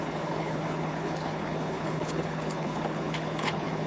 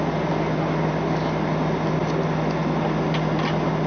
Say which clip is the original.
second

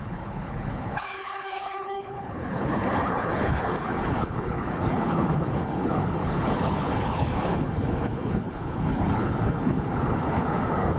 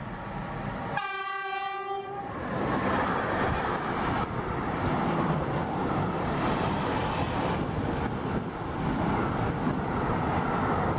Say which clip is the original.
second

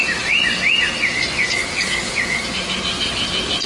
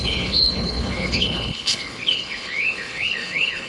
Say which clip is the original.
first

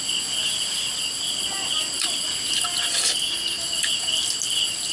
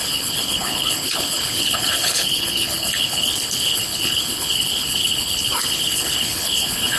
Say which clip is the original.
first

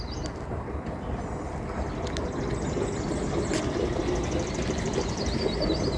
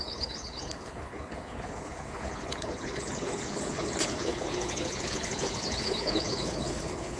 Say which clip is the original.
first